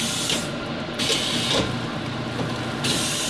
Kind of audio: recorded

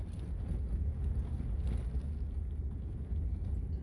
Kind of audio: recorded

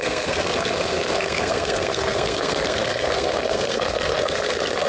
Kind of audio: remade